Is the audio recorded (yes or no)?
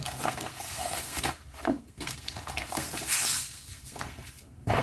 no